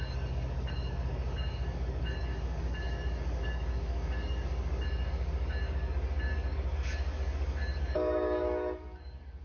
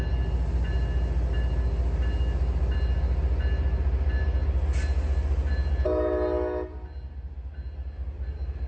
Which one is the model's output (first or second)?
first